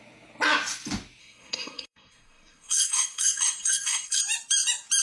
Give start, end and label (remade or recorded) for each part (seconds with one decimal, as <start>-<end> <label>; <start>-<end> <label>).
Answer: 0.0-1.2 recorded; 1.2-4.2 remade; 4.2-5.0 recorded